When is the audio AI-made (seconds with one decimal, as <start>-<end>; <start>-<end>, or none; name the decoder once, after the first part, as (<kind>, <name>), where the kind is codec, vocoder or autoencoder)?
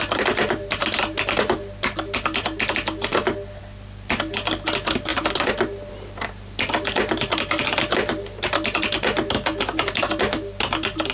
none